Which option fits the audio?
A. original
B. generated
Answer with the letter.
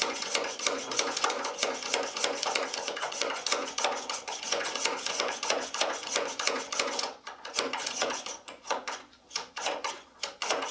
B